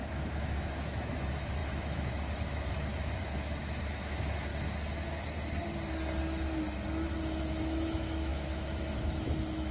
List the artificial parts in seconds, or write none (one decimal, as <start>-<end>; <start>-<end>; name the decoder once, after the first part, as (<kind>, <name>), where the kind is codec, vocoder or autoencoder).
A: 0.0-4.5 (autoencoder, DAC-VAE); 7.4-9.7